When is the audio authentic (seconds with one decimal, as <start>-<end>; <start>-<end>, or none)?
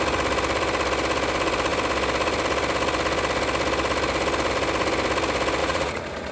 0.0-5.6